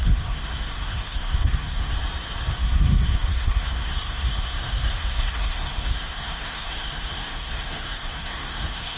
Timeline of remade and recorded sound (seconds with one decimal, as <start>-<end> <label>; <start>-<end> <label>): 0.0-1.9 remade; 1.9-2.5 recorded; 2.5-9.0 remade